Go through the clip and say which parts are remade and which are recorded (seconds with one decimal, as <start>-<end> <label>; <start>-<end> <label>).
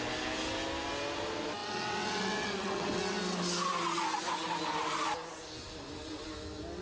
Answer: 0.0-1.6 recorded; 1.6-3.0 remade; 3.0-6.8 recorded